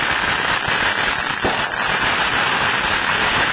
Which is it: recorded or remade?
recorded